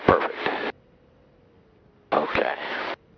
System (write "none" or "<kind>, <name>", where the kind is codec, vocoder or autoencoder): none